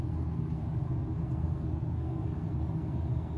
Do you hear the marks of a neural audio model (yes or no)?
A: yes